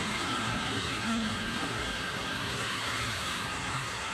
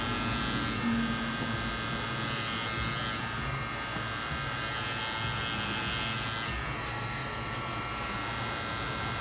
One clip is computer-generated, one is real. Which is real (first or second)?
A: second